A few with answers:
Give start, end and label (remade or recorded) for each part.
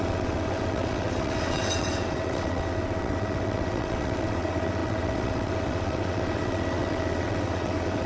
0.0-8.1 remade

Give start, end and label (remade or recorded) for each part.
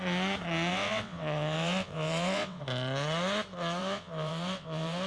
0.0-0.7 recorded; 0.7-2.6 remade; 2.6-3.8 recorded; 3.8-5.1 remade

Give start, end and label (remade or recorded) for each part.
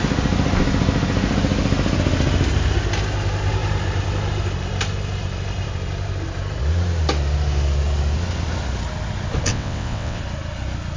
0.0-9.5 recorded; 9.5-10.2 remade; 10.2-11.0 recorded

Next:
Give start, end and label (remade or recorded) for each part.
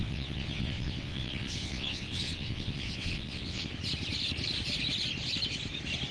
0.0-3.7 remade; 3.7-6.1 recorded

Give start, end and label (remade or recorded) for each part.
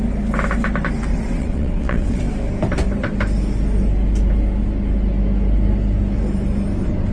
0.0-1.1 recorded; 1.1-2.2 remade; 2.2-7.1 recorded